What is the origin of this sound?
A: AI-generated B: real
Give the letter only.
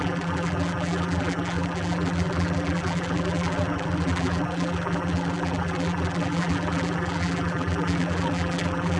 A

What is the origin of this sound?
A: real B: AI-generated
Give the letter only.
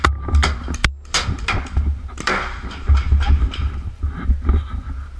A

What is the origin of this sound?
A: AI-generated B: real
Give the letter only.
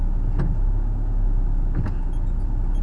B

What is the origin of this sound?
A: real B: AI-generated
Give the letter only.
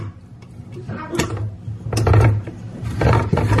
A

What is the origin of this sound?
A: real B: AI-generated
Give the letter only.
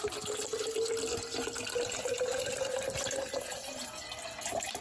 A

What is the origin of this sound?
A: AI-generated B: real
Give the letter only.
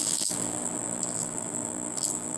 A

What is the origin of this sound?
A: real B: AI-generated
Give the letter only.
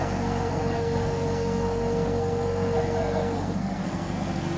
B